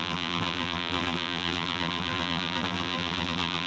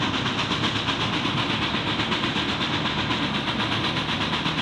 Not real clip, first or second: first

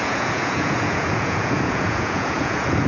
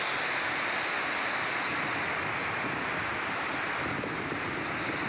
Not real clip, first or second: first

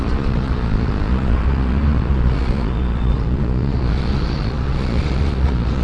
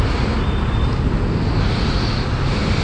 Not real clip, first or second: first